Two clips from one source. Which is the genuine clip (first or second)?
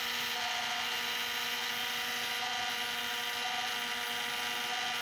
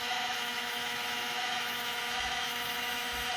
first